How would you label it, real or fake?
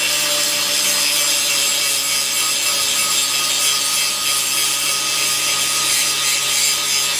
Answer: real